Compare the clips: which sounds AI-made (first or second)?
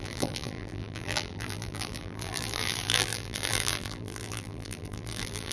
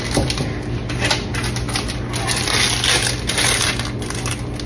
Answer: first